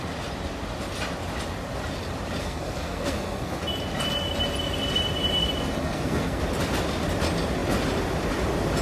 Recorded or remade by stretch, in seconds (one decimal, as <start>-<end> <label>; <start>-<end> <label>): 0.0-2.4 recorded; 2.4-3.6 remade; 3.6-5.8 recorded; 5.8-6.4 remade; 6.4-8.8 recorded